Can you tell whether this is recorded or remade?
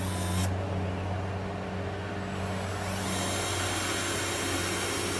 recorded